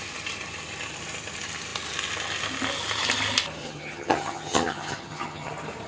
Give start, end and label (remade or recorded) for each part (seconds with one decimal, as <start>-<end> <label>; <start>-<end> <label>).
0.0-3.6 recorded; 3.6-5.5 remade; 5.5-5.9 recorded